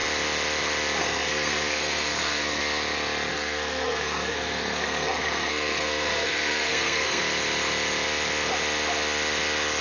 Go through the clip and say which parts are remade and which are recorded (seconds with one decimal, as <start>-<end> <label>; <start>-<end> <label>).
0.0-1.0 recorded; 1.0-2.6 remade; 2.6-3.3 recorded; 3.3-7.2 remade; 7.2-9.8 recorded